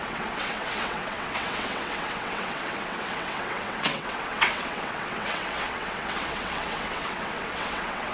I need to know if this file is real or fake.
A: fake